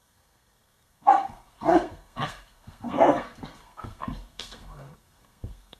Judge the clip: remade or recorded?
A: remade